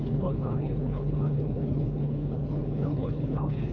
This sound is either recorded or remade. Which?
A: remade